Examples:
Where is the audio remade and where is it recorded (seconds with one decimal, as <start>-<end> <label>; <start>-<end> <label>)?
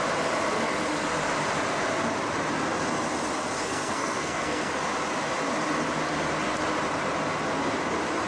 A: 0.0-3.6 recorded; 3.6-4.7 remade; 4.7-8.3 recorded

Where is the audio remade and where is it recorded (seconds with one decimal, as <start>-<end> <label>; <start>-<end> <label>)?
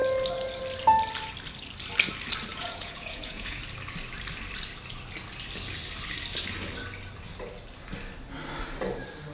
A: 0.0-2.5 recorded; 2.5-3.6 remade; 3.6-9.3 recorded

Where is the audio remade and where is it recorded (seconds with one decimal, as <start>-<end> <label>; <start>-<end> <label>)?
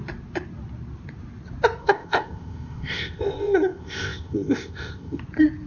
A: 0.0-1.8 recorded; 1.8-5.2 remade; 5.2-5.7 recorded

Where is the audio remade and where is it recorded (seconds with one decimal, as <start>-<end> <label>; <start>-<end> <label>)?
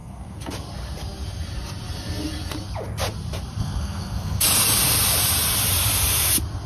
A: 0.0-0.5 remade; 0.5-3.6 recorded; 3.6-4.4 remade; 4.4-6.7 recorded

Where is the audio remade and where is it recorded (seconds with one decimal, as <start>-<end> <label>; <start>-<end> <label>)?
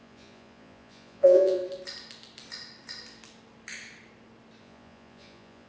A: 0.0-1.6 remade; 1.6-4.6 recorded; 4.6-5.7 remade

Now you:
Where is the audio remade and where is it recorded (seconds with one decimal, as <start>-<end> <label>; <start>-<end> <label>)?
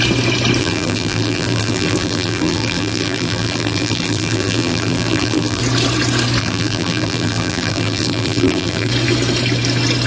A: 0.0-0.6 recorded; 0.6-5.6 remade; 5.6-6.4 recorded; 6.4-8.9 remade; 8.9-10.1 recorded